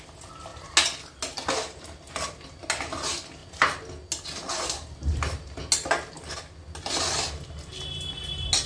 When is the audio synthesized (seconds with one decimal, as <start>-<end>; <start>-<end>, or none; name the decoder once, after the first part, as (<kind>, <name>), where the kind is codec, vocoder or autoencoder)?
none